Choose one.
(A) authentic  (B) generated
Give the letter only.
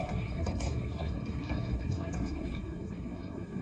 B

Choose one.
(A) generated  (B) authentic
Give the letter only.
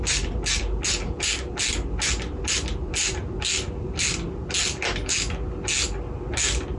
B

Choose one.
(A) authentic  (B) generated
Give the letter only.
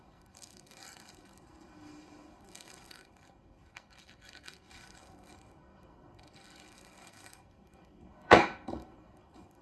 B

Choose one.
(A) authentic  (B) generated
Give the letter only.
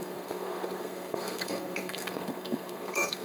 B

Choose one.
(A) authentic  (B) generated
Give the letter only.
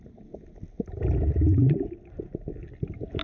A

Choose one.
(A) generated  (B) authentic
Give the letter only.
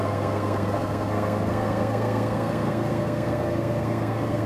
A